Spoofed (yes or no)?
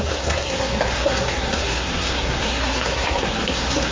yes